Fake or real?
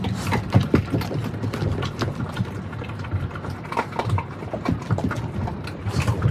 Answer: real